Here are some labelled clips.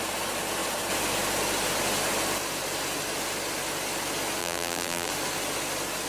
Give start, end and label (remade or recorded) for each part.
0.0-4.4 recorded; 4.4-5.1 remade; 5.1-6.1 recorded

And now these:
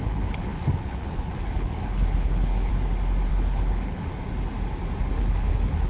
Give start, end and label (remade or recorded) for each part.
0.0-2.7 remade; 2.7-3.3 recorded; 3.3-4.1 remade; 4.1-5.1 recorded; 5.1-5.9 remade

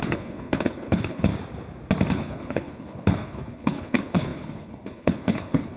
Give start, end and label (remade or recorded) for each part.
0.0-1.3 remade; 1.3-2.1 recorded; 2.1-5.8 remade

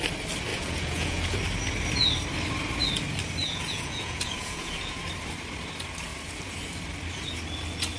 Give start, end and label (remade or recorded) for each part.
0.0-0.5 recorded; 0.5-1.4 remade; 1.4-3.4 recorded; 3.4-5.0 remade; 5.0-8.0 recorded